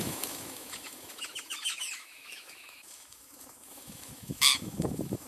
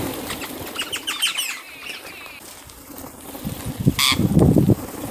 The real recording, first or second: second